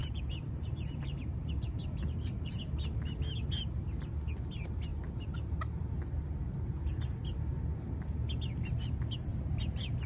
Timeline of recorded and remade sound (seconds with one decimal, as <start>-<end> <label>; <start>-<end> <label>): 0.0-2.6 remade; 2.6-4.9 recorded; 4.9-5.6 remade; 5.6-9.3 recorded; 9.3-10.1 remade